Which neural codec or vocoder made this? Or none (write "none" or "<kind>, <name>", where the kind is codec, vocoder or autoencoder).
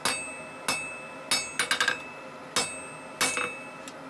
none